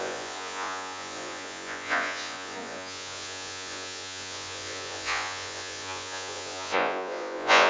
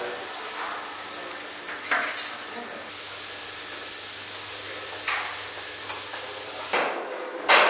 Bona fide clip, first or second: second